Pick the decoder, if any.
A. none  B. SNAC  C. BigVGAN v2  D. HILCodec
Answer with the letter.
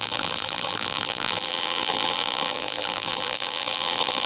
C